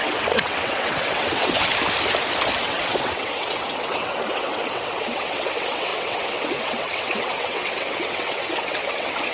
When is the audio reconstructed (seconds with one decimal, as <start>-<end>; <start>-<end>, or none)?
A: 0.0-1.7; 2.6-9.3